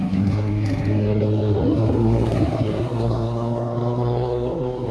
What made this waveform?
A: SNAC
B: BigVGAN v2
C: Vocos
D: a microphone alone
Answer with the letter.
A